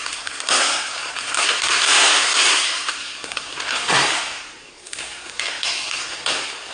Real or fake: fake